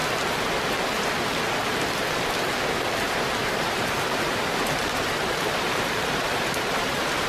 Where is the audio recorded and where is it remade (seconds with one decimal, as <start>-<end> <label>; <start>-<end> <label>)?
0.0-3.4 recorded; 3.4-7.3 remade